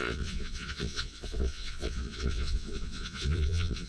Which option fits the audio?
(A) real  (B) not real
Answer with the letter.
B